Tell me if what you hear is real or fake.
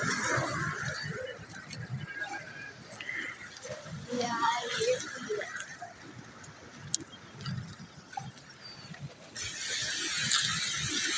real